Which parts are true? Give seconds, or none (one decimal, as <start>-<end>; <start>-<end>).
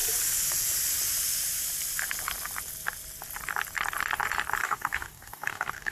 0.0-4.6